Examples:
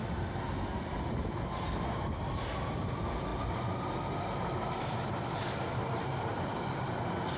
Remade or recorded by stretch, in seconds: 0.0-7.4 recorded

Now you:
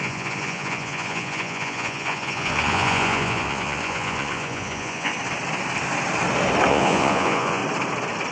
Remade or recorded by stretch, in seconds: 0.0-5.1 remade; 5.1-6.7 recorded; 6.7-7.6 remade; 7.6-8.3 recorded

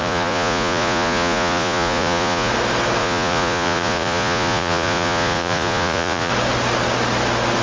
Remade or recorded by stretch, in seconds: 0.0-2.5 remade; 2.5-3.0 recorded; 3.0-6.3 remade; 6.3-7.6 recorded

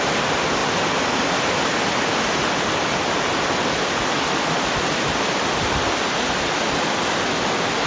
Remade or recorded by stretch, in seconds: 0.0-7.9 recorded

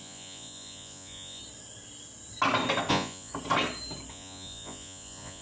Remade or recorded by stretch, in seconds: 0.0-1.4 remade; 1.4-2.9 recorded; 2.9-3.3 remade; 3.3-4.1 recorded; 4.1-5.4 remade

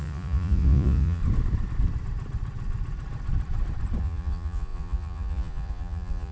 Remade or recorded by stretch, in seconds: 0.0-1.2 remade; 1.2-4.0 recorded; 4.0-6.3 remade